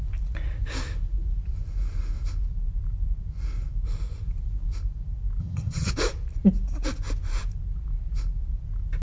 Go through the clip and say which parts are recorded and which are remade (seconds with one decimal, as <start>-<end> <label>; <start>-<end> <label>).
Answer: 0.0-5.4 recorded; 5.4-5.9 remade; 5.9-9.0 recorded